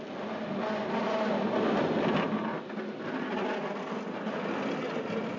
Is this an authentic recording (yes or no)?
yes